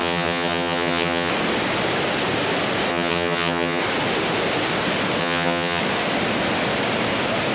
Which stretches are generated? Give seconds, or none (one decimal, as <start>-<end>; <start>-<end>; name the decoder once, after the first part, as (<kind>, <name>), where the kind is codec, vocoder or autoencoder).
0.0-1.3 (vocoder, HiFi-GAN); 2.9-3.8; 5.2-5.8